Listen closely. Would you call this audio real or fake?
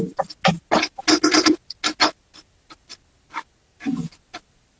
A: real